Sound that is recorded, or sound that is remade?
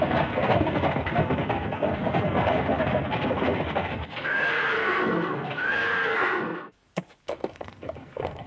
remade